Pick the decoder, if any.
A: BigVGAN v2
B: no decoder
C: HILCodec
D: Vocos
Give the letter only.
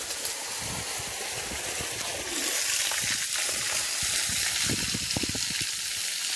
B